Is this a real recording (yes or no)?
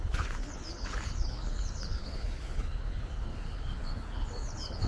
no